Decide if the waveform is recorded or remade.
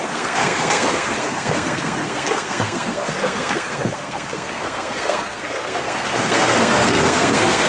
remade